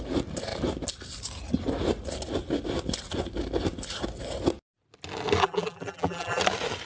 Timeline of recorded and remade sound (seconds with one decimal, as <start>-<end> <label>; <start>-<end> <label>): 0.0-5.4 recorded; 5.4-6.4 remade; 6.4-6.9 recorded